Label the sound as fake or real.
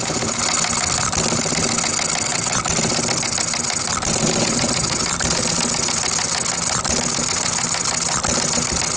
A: real